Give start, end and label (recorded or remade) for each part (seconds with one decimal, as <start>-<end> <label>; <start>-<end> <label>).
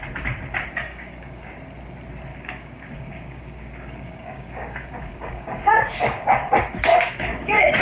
0.0-0.9 recorded; 0.9-1.5 remade; 1.5-2.3 recorded; 2.3-6.5 remade; 6.5-6.9 recorded; 6.9-7.8 remade